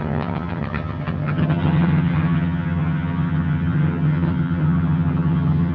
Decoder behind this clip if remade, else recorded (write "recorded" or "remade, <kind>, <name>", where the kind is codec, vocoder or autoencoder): remade, vocoder, HiFi-GAN